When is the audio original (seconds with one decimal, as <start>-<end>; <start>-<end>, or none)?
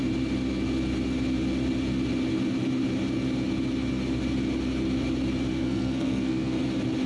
0.0-5.5; 6.6-7.1